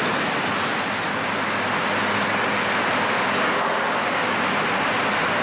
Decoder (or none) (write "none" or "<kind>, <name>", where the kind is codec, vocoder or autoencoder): none